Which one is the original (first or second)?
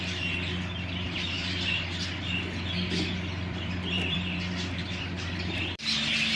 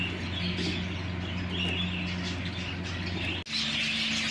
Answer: second